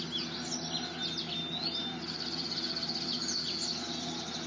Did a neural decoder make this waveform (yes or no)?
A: no